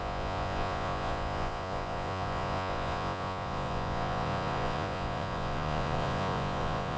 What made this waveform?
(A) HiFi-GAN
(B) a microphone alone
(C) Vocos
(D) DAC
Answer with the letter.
C